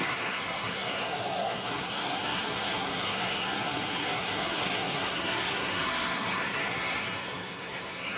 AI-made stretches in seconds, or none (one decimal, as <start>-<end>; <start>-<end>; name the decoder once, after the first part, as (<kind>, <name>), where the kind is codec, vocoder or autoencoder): 0.0-8.2 (codec, SNAC)